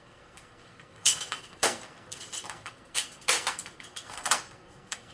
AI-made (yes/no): yes